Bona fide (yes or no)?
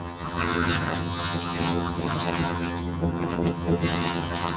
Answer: no